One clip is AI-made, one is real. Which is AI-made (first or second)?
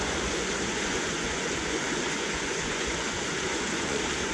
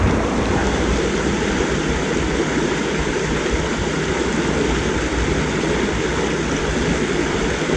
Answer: first